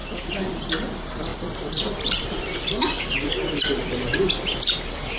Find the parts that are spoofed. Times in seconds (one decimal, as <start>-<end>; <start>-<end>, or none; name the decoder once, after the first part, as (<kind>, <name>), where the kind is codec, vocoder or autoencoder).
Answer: 0.0-0.5 (vocoder, BigVGAN v2); 1.3-3.3

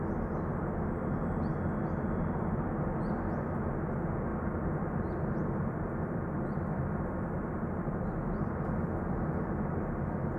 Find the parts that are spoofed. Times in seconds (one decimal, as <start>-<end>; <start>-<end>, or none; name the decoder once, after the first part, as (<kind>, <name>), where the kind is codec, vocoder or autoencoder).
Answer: 4.3-8.5 (vocoder, BigVGAN v2)

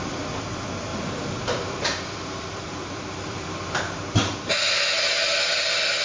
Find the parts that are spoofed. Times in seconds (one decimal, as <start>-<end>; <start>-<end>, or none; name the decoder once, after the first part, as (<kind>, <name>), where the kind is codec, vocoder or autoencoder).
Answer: 0.9-4.5 (vocoder, BigVGAN v2)